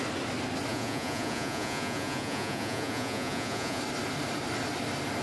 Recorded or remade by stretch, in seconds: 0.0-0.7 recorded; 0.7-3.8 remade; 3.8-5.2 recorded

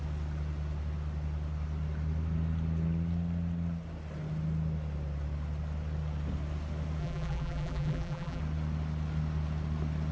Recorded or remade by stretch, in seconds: 0.0-7.0 recorded; 7.0-8.4 remade; 8.4-10.1 recorded

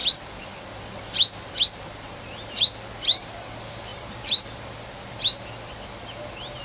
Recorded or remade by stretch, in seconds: 0.0-6.6 recorded

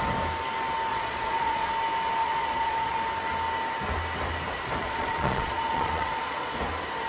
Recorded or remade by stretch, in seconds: 0.0-0.9 recorded; 0.9-1.7 remade; 1.7-2.2 recorded; 2.2-3.0 remade; 3.0-4.8 recorded; 4.8-6.6 remade; 6.6-7.1 recorded

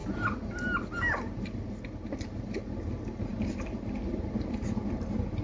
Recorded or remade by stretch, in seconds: 0.0-5.4 recorded

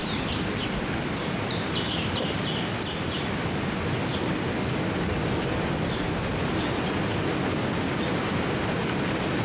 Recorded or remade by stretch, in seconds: 0.0-9.4 recorded

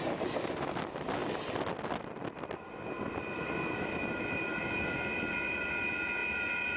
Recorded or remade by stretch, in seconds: 0.0-6.8 recorded

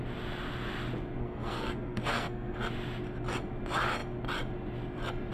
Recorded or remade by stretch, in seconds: 0.0-1.2 recorded; 1.2-2.7 remade; 2.7-5.3 recorded